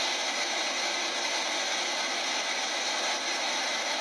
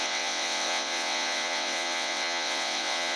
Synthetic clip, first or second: second